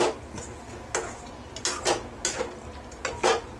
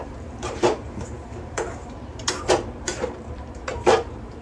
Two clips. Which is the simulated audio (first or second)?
second